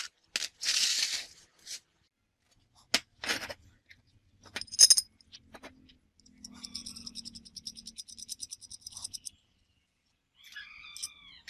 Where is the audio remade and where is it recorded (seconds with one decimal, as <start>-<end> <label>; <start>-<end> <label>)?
0.0-11.5 recorded